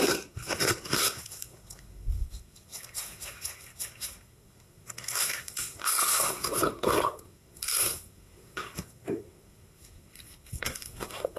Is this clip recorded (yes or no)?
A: no